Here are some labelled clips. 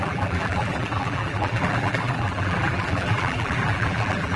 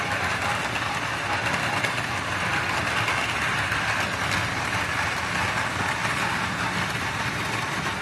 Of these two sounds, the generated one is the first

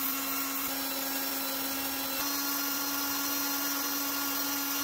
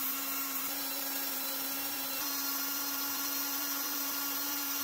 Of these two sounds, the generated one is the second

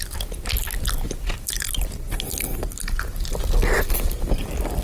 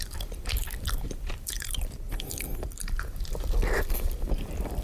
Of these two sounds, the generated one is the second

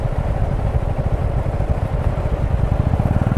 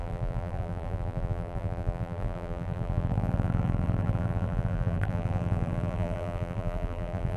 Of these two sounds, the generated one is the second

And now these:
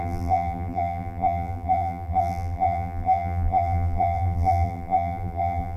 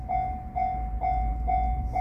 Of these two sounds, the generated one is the first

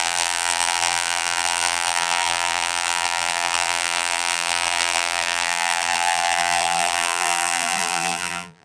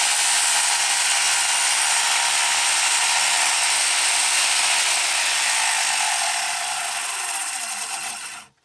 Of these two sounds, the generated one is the first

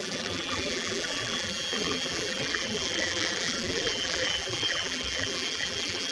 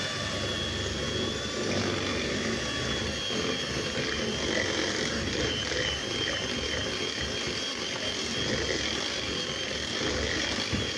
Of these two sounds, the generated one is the first